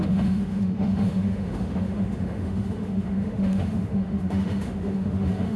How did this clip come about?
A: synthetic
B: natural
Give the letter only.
A